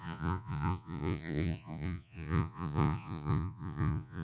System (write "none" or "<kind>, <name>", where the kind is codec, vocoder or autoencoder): vocoder, Vocos